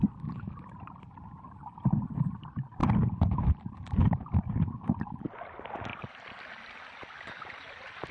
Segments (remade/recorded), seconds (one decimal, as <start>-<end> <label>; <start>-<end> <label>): 0.0-2.8 recorded; 2.8-5.2 remade; 5.2-8.1 recorded